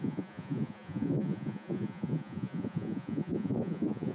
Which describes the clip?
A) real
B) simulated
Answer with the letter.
B